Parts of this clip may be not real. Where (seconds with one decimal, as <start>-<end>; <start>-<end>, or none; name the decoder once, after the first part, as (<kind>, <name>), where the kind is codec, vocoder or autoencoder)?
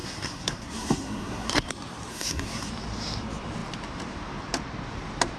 0.0-1.7 (codec, SNAC); 2.1-2.7